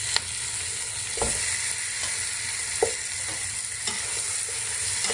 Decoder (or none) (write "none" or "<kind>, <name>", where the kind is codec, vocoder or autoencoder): none